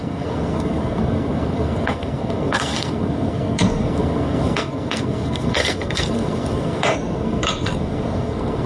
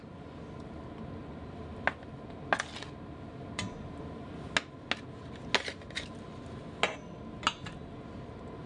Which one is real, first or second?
second